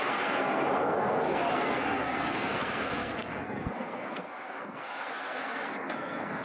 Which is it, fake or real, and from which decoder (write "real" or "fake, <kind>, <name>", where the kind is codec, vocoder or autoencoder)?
fake, codec, SNAC